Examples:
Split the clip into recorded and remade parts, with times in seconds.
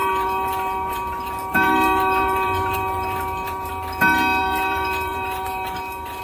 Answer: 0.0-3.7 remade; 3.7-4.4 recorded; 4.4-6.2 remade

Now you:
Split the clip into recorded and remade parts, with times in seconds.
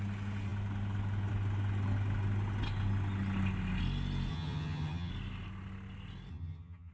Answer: 0.0-4.3 recorded; 4.3-5.1 remade; 5.1-6.3 recorded; 6.3-6.9 remade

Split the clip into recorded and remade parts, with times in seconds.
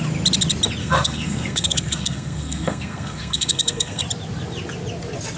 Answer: 0.0-0.8 recorded; 0.8-4.0 remade; 4.0-5.4 recorded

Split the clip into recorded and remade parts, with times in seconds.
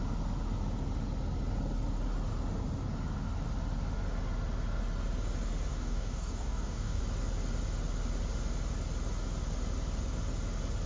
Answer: 0.0-5.7 recorded; 5.7-7.0 remade; 7.0-10.9 recorded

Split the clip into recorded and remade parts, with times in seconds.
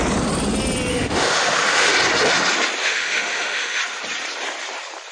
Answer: 0.0-0.9 recorded; 0.9-1.9 remade; 1.9-2.8 recorded; 2.8-3.8 remade; 3.8-5.1 recorded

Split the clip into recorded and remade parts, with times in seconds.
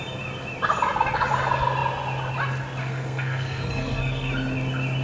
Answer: 0.0-2.8 recorded; 2.8-4.3 remade; 4.3-5.0 recorded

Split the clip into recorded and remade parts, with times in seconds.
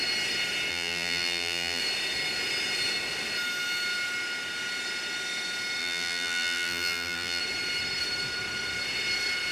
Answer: 0.0-0.7 recorded; 0.7-1.8 remade; 1.8-5.8 recorded; 5.8-7.4 remade; 7.4-9.5 recorded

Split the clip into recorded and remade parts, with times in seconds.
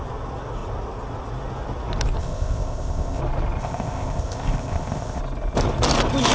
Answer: 0.0-2.2 recorded; 2.2-3.2 remade; 3.2-3.6 recorded; 3.6-5.2 remade; 5.2-6.3 recorded